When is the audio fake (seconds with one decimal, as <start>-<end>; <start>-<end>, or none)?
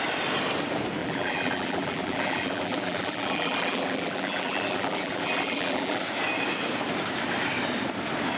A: 1.0-6.0